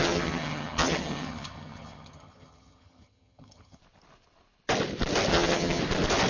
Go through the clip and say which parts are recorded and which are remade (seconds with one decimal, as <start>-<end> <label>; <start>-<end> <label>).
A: 0.0-3.8 remade; 3.8-5.3 recorded; 5.3-5.8 remade; 5.8-6.3 recorded